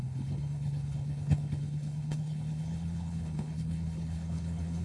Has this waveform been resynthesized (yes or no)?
yes